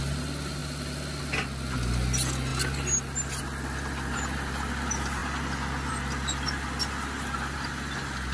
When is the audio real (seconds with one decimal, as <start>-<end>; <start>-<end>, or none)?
0.0-8.3